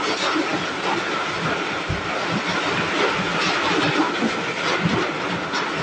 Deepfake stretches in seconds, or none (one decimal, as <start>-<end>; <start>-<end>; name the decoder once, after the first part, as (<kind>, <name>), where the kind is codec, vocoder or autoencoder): none